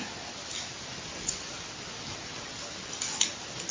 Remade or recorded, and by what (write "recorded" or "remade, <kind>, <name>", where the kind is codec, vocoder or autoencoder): recorded